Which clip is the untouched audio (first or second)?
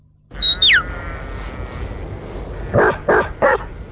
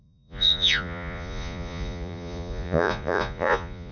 first